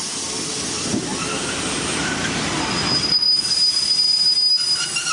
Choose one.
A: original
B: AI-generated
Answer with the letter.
A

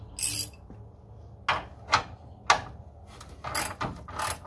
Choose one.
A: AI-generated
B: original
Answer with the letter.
B